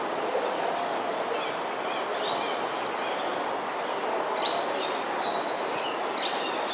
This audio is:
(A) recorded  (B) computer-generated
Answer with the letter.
A